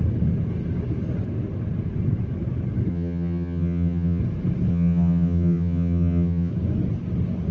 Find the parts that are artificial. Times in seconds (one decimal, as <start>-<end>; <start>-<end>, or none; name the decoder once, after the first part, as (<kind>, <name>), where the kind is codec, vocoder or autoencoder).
2.9-4.2 (vocoder, HiFi-GAN); 4.7-6.5

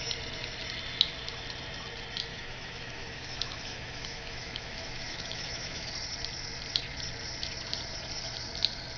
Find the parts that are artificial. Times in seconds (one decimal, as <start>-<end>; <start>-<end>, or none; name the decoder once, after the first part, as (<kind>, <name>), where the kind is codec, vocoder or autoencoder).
2.3-5.9 (autoencoder, DAC-VAE)

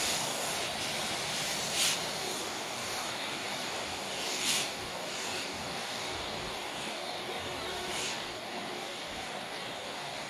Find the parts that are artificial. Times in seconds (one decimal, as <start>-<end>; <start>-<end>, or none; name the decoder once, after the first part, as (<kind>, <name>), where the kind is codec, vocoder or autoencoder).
0.0-0.5 (codec, DAC); 2.2-10.3

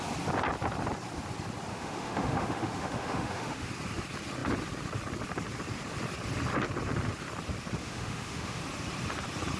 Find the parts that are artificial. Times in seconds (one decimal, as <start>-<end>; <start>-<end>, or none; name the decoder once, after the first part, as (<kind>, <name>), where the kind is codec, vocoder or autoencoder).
1.7-3.7 (autoencoder, DAC-VAE); 7.8-8.6